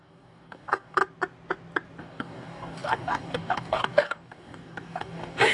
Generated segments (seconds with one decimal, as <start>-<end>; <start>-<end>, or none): 0.0-1.0; 2.0-5.5